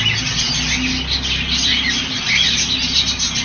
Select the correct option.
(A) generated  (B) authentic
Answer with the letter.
B